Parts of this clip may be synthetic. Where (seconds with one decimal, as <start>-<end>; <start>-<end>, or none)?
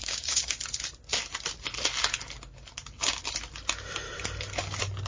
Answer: 0.0-0.6